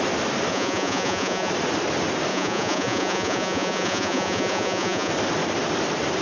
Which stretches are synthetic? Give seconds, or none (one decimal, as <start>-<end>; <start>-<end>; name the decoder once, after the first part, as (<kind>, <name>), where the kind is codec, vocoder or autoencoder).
0.5-1.5 (vocoder, Vocos); 2.3-5.1